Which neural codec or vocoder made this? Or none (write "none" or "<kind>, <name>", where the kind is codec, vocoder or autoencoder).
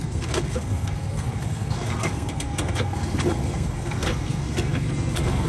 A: codec, SNAC